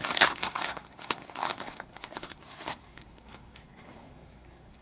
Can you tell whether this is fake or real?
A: fake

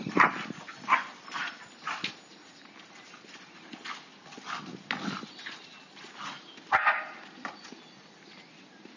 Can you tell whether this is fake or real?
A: real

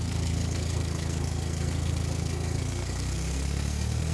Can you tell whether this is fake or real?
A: fake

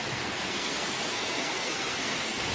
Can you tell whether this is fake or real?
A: fake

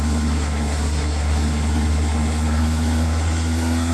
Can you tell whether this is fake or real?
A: fake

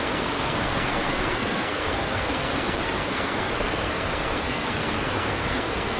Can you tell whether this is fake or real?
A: fake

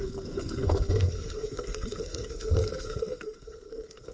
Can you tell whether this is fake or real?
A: fake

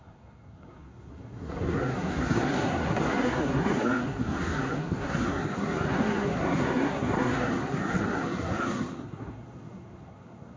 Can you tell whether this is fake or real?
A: fake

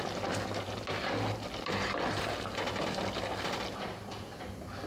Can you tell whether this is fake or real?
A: real